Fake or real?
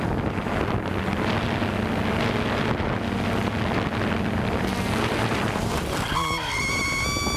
real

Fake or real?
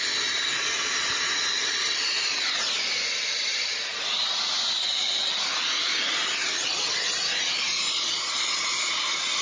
real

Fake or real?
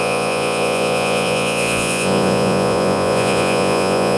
fake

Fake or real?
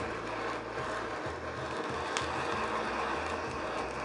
real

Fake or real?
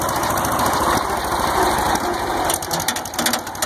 real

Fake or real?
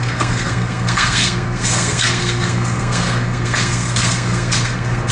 fake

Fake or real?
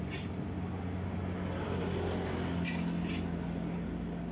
real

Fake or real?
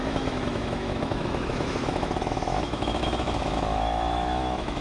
fake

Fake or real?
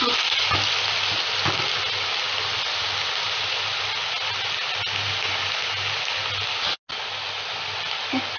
real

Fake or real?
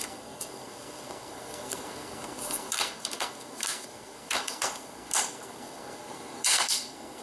fake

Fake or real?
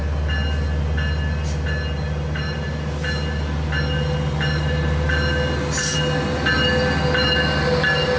real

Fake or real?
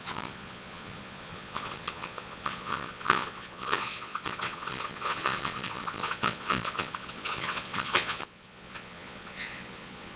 fake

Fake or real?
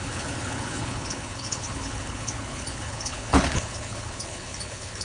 fake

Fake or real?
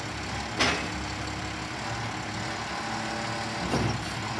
real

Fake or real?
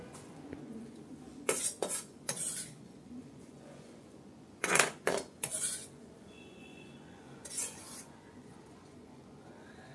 fake